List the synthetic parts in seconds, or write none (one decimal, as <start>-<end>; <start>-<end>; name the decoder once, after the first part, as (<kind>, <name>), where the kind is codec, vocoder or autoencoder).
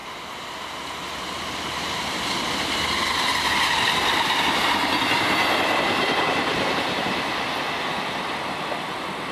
none